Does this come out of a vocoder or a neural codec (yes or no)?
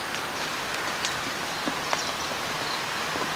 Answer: no